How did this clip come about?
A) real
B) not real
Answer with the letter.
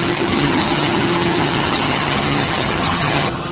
B